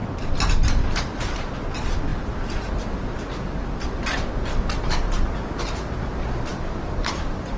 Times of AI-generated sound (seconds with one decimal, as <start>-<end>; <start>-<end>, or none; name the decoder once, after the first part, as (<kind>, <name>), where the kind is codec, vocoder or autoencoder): 0.0-1.6 (vocoder, BigVGAN v2); 6.5-7.6